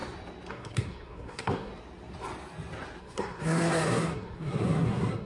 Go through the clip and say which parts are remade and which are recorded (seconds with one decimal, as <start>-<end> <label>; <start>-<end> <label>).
0.0-0.5 recorded; 0.5-1.7 remade; 1.7-3.0 recorded; 3.0-5.3 remade